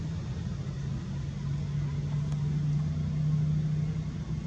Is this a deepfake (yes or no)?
no